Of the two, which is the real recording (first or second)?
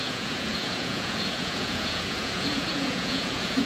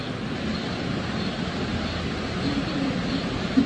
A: second